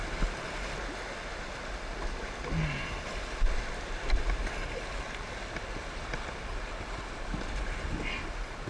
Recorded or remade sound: recorded